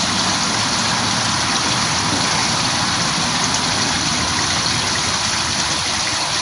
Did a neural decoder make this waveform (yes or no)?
no